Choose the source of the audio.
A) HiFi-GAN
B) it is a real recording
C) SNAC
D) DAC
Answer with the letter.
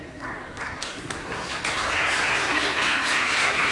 C